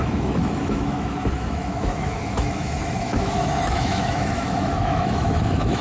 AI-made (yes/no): yes